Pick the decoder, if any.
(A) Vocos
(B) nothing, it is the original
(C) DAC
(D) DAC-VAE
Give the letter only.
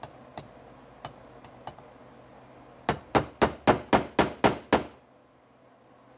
B